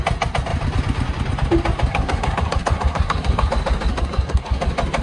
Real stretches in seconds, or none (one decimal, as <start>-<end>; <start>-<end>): 0.0-1.9; 3.5-3.9; 4.6-5.0

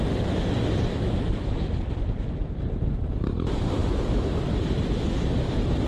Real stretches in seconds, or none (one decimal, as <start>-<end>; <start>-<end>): 0.0-0.9; 1.7-5.9

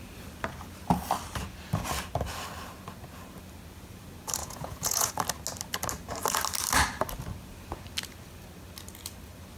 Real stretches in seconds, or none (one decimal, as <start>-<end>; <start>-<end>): 0.0-4.4; 5.1-9.6

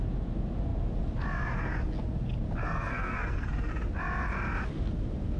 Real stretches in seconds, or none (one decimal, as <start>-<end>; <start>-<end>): 0.0-2.7; 3.7-5.4

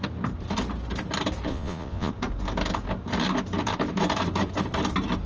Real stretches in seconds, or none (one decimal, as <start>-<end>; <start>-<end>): 0.0-1.5; 2.1-5.3

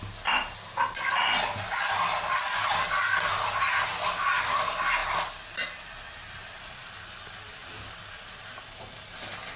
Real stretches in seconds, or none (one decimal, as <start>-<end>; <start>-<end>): 0.0-9.6

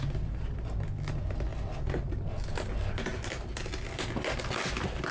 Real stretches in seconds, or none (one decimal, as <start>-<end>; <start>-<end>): 0.0-5.1

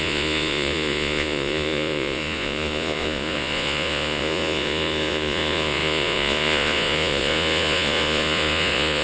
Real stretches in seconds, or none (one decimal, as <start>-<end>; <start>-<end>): none